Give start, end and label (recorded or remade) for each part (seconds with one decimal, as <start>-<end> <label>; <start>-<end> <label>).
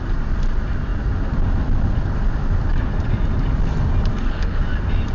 0.0-4.1 recorded; 4.1-4.6 remade; 4.6-5.1 recorded